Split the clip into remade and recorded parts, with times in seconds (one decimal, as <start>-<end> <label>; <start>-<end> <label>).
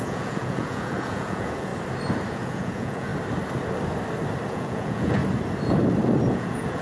0.0-1.7 remade; 1.7-2.3 recorded; 2.3-3.1 remade; 3.1-4.5 recorded; 4.5-5.2 remade; 5.2-6.3 recorded; 6.3-6.8 remade